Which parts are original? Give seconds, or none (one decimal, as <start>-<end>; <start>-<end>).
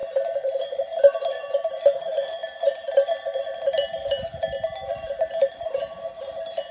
none